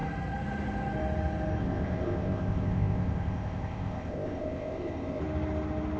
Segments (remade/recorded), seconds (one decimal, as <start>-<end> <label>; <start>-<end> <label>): 0.0-1.6 recorded; 1.6-5.2 remade; 5.2-6.0 recorded